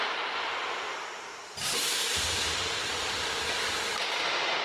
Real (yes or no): no